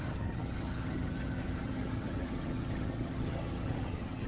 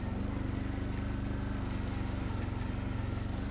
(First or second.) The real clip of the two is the second